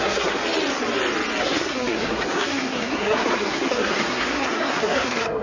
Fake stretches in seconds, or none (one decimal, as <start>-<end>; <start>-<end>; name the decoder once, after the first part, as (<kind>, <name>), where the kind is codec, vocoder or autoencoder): 0.0-0.4 (codec, SNAC); 1.4-5.4

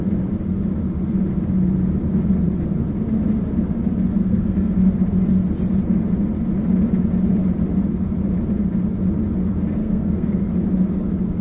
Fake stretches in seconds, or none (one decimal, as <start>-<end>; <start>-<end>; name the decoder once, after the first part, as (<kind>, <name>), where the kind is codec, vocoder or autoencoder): 4.2-4.7 (codec, SNAC); 9.8-10.5